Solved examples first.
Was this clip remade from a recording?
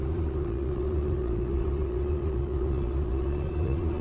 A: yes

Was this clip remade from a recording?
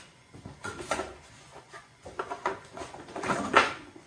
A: yes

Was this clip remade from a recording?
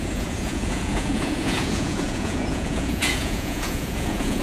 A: yes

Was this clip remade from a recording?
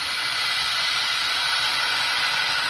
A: yes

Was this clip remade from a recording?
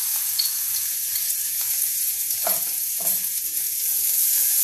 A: yes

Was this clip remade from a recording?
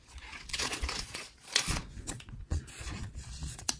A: yes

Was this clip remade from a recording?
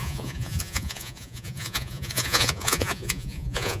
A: yes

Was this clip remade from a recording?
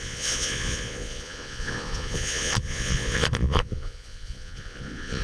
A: yes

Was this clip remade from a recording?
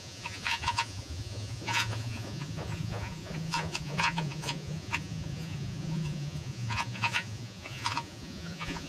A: yes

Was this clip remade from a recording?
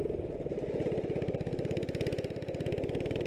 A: no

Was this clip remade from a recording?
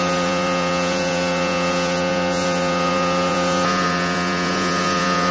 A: yes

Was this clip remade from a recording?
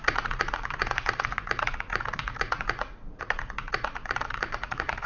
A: yes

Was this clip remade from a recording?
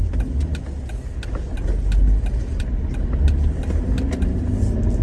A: no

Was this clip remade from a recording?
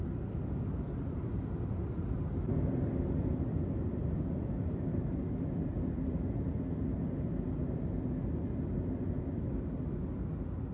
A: no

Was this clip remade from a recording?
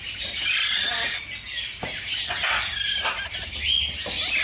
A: no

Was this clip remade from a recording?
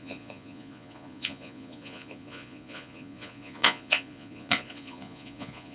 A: yes